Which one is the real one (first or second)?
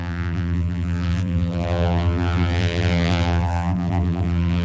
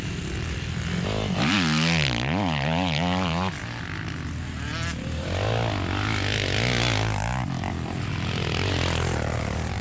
second